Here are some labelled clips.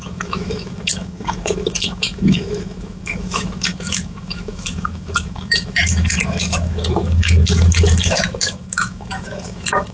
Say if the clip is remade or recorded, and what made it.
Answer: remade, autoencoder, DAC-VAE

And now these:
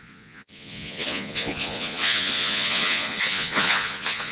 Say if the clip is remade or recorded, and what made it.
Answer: remade, vocoder, Vocos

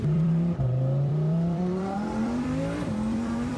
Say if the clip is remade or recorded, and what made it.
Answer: remade, vocoder, BigVGAN v2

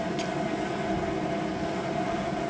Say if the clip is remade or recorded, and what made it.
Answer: recorded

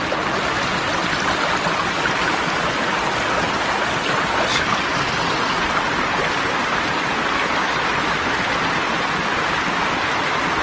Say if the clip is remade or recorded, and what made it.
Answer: recorded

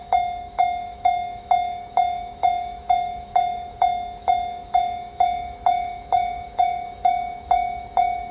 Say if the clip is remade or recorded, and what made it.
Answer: remade, autoencoder, DAC-VAE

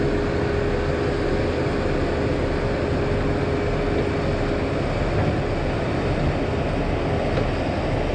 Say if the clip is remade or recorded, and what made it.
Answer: recorded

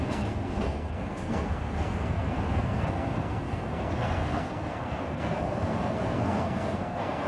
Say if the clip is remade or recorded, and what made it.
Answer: remade, codec, SNAC